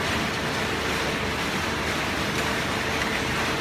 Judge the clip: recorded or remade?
recorded